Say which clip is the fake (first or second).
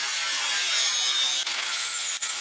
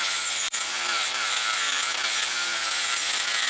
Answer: second